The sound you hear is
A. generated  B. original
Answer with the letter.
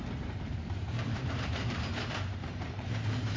A